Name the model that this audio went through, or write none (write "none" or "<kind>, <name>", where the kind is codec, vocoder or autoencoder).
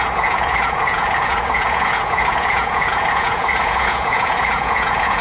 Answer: vocoder, Vocos